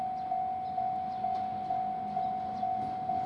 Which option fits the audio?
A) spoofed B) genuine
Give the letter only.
B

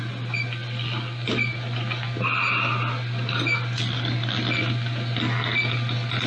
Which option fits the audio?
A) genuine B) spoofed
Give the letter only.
A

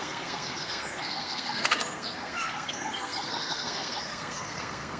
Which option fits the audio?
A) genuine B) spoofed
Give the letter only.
B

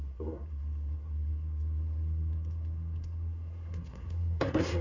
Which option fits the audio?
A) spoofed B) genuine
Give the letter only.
A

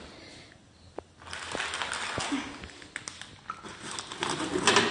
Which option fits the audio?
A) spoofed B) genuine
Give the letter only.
B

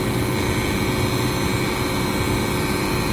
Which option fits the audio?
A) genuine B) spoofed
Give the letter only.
A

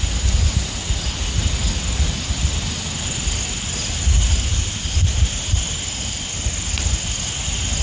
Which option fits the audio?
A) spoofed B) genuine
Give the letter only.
B